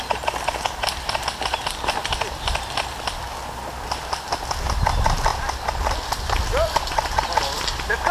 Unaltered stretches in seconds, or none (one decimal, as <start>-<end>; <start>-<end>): 0.0-8.1